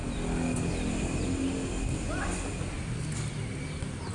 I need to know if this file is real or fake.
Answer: real